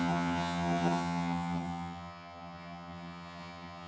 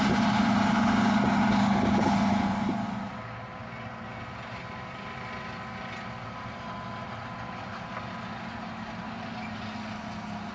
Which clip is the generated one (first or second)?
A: first